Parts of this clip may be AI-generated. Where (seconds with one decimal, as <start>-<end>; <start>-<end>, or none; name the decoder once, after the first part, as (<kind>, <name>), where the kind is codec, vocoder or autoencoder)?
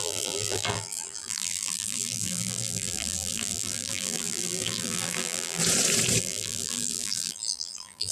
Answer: 0.0-5.6 (vocoder, BigVGAN v2); 6.2-8.1